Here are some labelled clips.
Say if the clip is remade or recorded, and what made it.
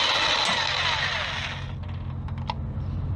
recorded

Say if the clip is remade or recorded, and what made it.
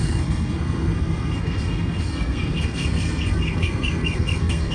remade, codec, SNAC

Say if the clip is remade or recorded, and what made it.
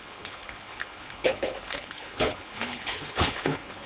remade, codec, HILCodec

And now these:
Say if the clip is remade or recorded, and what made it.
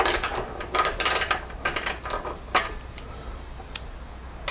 recorded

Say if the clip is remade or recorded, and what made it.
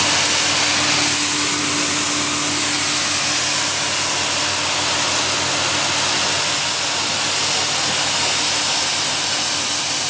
recorded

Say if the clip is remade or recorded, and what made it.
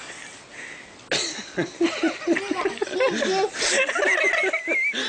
recorded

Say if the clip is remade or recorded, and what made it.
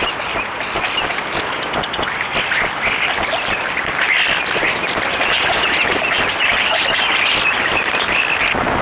recorded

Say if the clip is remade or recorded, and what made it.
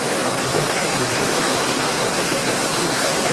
remade, codec, SNAC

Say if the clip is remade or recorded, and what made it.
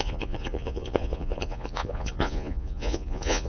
remade, vocoder, Vocos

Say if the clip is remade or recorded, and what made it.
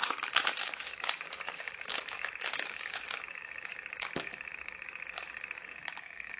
remade, codec, DAC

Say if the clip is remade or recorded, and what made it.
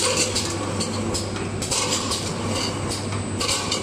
recorded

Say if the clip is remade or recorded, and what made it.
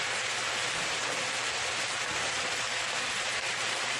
remade, vocoder, BigVGAN v2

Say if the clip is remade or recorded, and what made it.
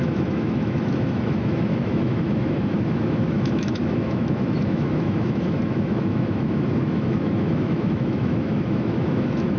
remade, autoencoder, DAC-VAE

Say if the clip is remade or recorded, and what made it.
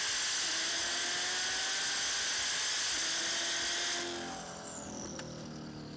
recorded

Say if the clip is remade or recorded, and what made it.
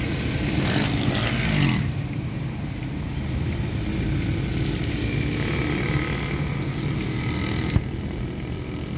recorded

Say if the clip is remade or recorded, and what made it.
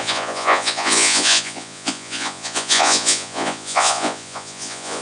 remade, vocoder, Vocos